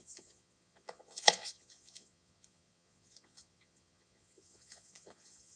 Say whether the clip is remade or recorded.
remade